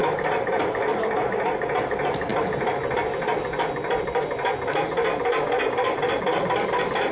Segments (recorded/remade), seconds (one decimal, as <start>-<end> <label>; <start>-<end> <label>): 0.0-7.1 recorded